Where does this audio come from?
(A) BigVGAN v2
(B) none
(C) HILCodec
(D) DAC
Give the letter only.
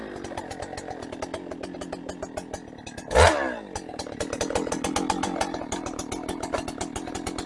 B